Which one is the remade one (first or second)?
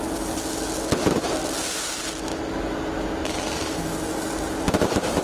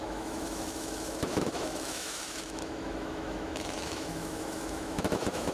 second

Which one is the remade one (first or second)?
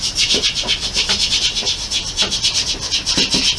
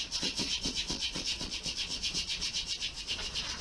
second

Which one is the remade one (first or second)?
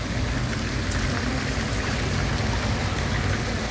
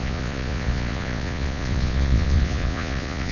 second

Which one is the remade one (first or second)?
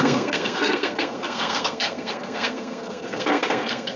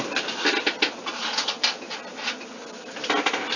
first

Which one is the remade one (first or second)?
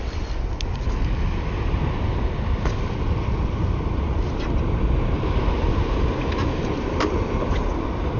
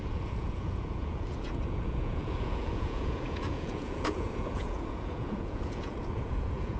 second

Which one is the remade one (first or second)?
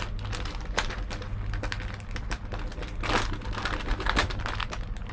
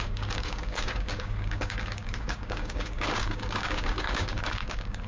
second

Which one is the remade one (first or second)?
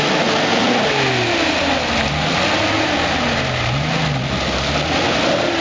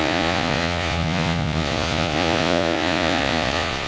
second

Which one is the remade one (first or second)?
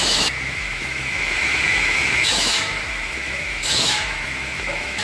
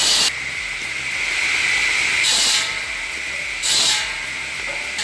first